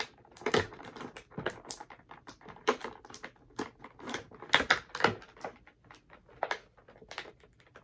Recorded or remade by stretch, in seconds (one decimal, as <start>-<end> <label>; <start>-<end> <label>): 0.0-2.8 remade; 2.8-7.3 recorded; 7.3-7.8 remade